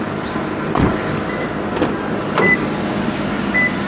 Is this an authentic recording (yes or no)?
yes